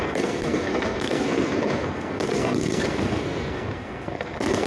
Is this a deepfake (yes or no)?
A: yes